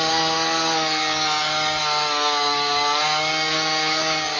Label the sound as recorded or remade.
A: remade